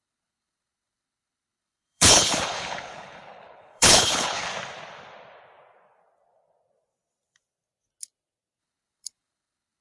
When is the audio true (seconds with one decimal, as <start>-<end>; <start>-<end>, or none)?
4.5-8.6